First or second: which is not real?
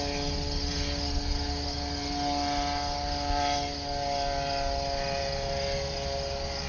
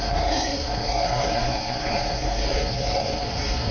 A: second